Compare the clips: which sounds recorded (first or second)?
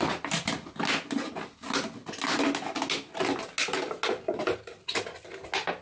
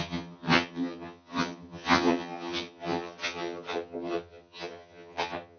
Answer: first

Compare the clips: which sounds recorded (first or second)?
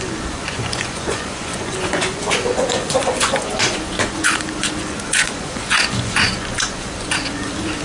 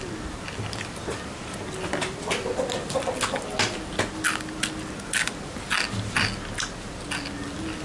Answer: second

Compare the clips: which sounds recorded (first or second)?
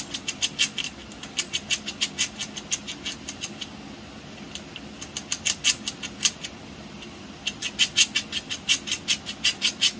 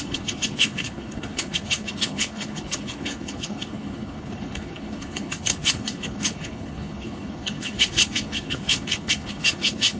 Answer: first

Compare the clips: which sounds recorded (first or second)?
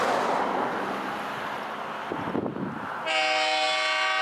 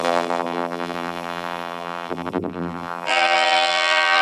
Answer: first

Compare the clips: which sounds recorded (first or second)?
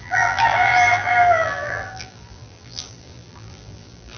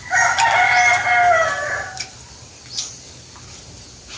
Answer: second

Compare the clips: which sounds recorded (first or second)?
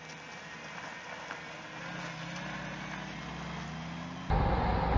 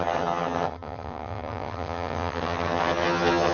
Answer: first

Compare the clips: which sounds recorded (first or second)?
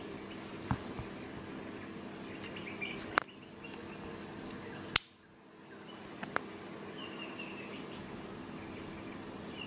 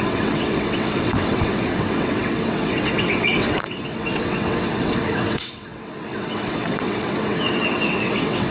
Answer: first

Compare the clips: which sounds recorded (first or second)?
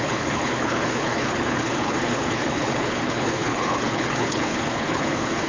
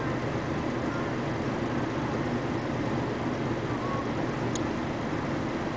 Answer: second